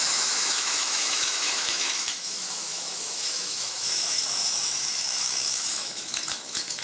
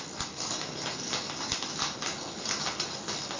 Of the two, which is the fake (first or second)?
first